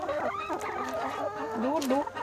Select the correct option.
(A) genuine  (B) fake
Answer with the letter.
A